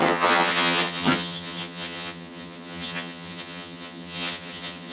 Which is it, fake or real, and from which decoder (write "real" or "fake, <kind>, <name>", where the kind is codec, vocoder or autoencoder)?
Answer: fake, vocoder, HiFi-GAN